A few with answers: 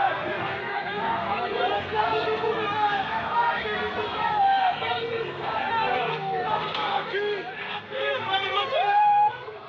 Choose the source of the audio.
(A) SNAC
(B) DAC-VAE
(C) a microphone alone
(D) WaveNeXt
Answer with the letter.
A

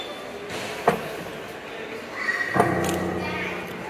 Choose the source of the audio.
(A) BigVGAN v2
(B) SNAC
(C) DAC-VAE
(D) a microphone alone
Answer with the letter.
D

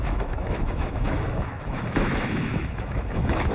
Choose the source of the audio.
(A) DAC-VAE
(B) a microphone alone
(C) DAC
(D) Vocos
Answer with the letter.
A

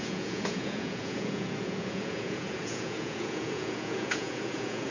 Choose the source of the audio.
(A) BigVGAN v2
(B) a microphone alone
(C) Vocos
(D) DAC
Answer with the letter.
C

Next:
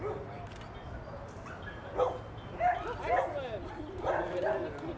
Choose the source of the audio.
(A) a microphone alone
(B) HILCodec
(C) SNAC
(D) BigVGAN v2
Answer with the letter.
A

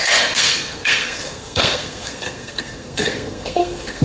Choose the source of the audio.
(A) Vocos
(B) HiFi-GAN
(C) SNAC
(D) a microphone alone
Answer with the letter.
C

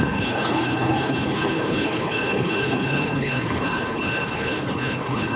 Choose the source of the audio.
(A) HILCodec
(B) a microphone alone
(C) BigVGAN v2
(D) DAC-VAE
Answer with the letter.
A